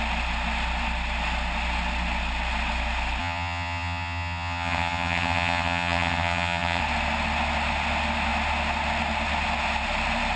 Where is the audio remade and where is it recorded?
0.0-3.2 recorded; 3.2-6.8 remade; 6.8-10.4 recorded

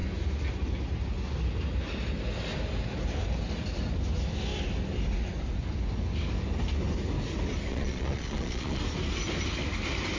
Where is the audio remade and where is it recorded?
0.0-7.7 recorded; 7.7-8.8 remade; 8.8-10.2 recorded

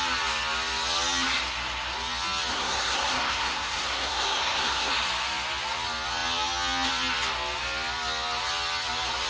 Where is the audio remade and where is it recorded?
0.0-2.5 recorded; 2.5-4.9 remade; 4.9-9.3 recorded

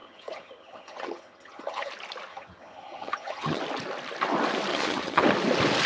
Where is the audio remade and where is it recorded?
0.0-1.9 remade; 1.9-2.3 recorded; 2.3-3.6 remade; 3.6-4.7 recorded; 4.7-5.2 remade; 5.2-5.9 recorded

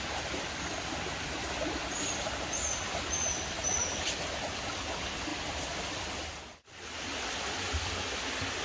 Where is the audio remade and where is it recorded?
0.0-8.6 recorded

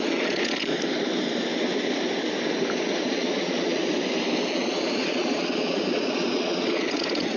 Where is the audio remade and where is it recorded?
0.0-0.7 remade; 0.7-2.8 recorded; 2.8-3.8 remade; 3.8-4.5 recorded; 4.5-7.4 remade

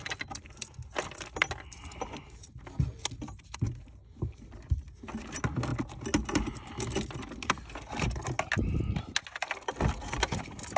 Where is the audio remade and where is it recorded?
0.0-10.8 recorded

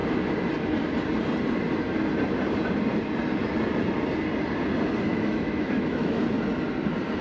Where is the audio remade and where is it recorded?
0.0-5.1 recorded; 5.1-6.2 remade; 6.2-7.2 recorded